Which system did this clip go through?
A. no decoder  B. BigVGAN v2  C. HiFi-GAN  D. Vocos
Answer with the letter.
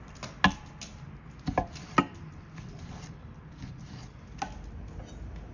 A